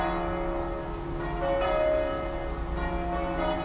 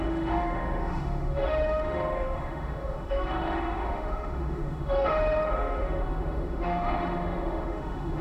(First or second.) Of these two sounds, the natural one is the first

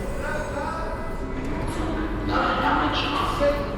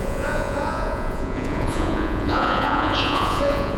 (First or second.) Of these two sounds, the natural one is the first